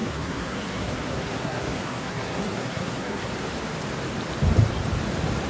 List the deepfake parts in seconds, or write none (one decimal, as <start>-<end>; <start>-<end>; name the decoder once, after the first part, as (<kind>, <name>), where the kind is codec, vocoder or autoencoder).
0.0-3.3 (codec, SNAC)

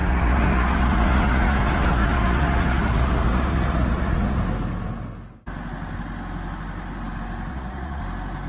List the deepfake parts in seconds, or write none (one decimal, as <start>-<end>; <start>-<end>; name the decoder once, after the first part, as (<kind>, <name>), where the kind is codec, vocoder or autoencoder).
0.0-4.4 (vocoder, Vocos); 7.5-8.0

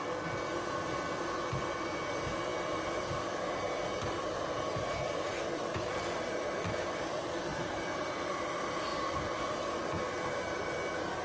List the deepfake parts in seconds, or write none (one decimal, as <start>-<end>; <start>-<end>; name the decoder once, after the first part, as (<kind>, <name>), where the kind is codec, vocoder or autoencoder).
2.5-6.4 (vocoder, BigVGAN v2); 7.5-8.1; 8.9-9.4

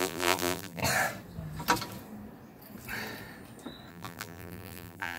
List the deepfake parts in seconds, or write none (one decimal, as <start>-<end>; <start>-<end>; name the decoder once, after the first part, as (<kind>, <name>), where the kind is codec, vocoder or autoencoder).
0.0-0.8 (vocoder, BigVGAN v2); 3.9-5.2